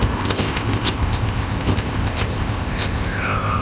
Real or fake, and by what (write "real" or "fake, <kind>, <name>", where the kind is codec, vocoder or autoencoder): fake, codec, ZipCodec